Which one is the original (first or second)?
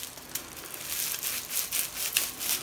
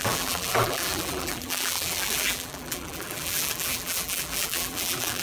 first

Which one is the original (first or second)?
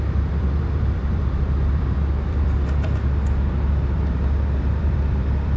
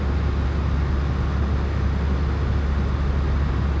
second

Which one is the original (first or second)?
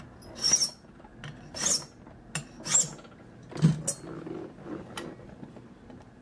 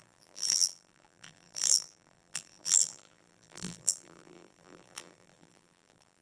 first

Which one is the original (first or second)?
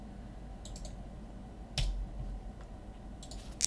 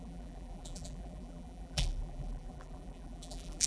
first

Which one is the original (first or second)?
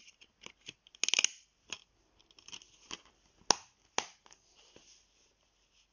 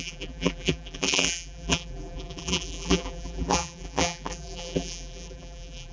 first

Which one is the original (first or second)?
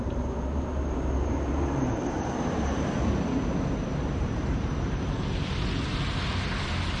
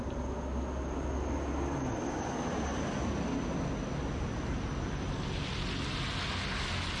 second